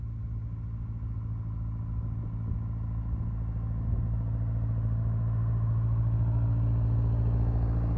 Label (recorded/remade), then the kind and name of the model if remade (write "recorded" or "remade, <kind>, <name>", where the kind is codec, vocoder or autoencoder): recorded